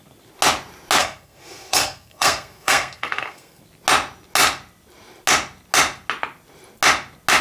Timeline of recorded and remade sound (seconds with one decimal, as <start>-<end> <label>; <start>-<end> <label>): 0.0-1.0 recorded; 1.0-3.6 remade; 3.6-7.4 recorded